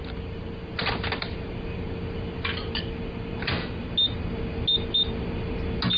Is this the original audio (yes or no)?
yes